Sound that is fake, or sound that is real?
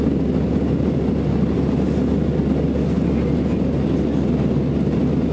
real